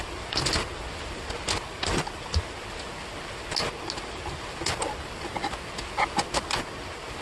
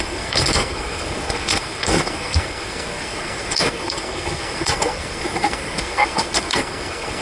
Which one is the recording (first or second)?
first